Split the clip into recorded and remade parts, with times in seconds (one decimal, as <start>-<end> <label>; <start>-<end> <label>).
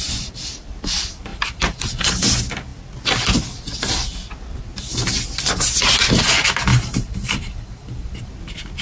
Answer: 0.0-1.3 recorded; 1.3-2.1 remade; 2.1-6.7 recorded; 6.7-8.3 remade; 8.3-8.8 recorded